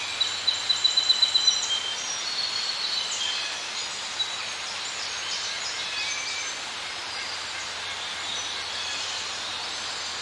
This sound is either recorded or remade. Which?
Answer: recorded